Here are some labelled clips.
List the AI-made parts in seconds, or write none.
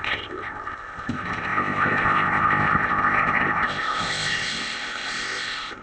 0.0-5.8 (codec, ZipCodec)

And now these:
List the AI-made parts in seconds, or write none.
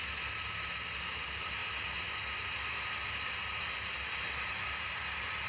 none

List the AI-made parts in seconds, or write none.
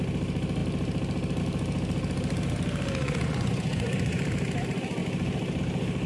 3.0-4.2 (vocoder, Vocos)